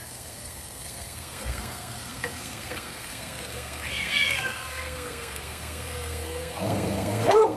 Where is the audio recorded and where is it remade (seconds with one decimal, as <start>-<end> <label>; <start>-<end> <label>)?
0.0-7.6 remade